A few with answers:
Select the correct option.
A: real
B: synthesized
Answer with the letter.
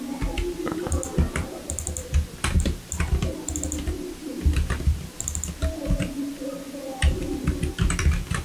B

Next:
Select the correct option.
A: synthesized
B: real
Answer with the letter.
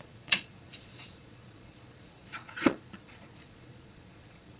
A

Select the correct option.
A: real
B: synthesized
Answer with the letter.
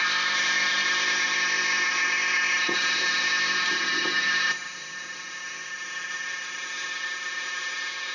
B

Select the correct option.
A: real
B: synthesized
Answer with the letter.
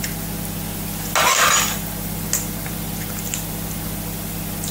A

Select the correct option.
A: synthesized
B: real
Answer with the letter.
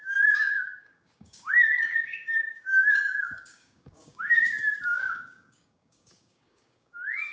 A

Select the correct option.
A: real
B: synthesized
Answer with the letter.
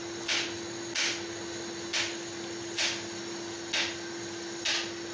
A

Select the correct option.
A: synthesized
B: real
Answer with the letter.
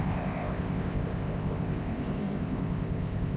A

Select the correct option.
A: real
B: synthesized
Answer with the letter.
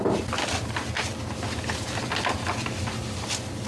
A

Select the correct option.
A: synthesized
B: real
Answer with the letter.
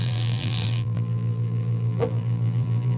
A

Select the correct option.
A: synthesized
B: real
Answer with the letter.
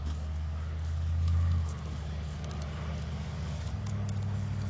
A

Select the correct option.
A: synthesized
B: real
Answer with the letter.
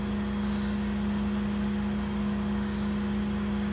B